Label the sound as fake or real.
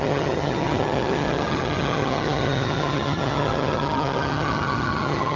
fake